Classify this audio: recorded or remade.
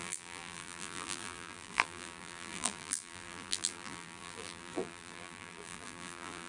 remade